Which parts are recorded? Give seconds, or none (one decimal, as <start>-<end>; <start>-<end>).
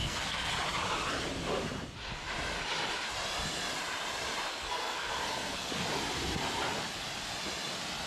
0.5-4.5; 5.7-8.1